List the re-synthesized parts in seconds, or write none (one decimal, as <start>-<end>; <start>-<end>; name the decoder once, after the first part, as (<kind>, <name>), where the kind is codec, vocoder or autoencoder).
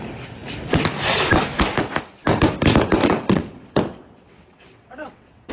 3.0-5.5 (vocoder, WaveNeXt)